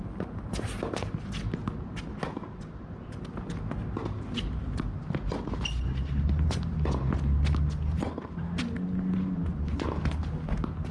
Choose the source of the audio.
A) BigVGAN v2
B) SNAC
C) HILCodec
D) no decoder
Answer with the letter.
D